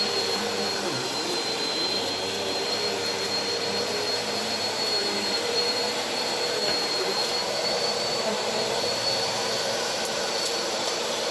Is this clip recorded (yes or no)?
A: no